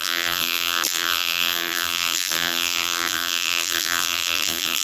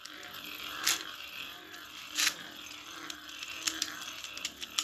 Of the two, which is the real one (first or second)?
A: second